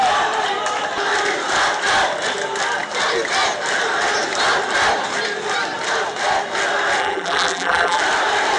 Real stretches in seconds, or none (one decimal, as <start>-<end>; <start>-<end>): 0.0-7.0; 8.0-8.6